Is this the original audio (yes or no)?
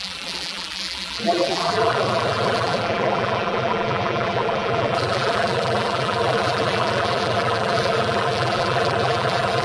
no